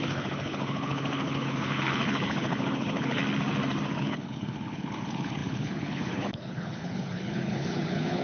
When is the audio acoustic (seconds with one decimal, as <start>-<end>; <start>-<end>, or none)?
3.2-3.9